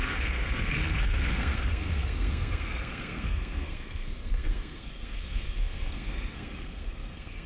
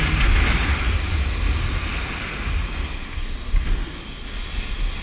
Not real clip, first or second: first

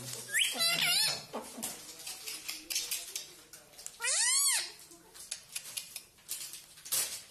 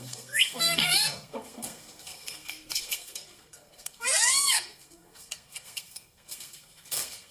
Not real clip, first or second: second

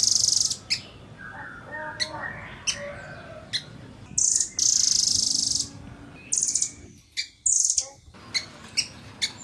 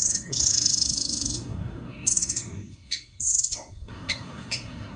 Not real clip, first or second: second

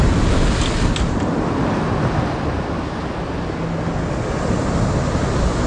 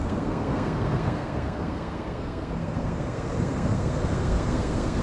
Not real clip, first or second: second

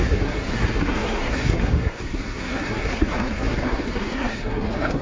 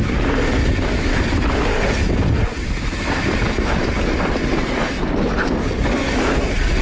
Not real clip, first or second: first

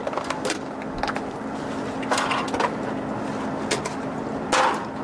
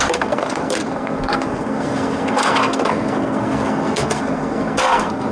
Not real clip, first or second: second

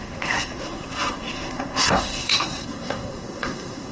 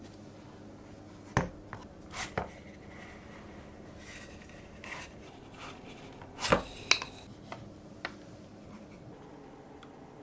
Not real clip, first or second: first